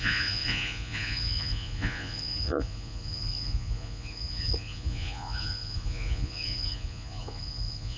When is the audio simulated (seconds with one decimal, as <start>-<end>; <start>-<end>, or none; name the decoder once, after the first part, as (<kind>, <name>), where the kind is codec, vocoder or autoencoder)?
0.0-8.0 (vocoder, Vocos)